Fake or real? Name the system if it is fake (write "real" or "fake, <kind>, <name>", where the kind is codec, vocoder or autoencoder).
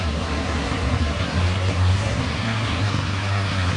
fake, codec, SNAC